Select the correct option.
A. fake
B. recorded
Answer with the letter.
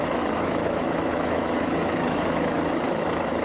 A